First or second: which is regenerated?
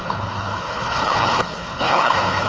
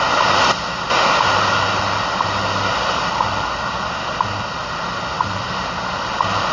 first